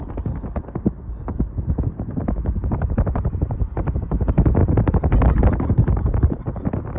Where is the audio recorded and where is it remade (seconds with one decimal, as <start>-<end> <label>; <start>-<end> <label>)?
0.0-2.6 recorded; 2.6-4.0 remade; 4.0-4.6 recorded; 4.6-6.4 remade; 6.4-7.0 recorded